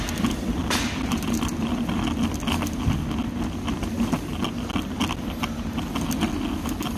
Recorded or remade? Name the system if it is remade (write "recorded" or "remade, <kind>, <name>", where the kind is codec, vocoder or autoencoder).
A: recorded